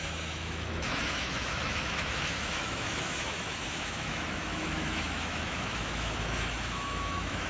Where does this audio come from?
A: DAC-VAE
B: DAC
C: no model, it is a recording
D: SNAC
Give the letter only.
A